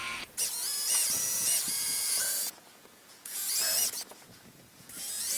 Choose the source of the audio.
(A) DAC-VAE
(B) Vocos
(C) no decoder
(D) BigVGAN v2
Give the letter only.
B